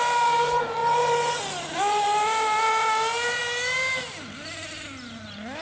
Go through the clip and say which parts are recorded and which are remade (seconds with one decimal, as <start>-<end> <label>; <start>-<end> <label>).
0.0-5.6 recorded